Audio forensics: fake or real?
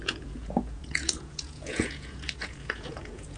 fake